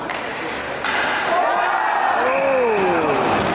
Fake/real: real